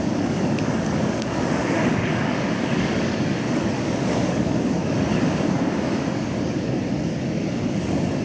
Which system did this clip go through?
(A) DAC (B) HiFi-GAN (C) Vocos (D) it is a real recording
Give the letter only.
A